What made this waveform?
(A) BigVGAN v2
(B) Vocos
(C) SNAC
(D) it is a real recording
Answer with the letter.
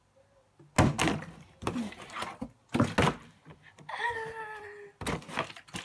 D